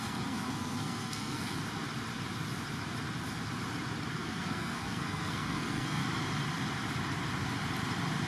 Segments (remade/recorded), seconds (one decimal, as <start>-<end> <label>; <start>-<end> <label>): 0.0-1.6 remade; 1.6-4.1 recorded; 4.1-6.0 remade; 6.0-8.3 recorded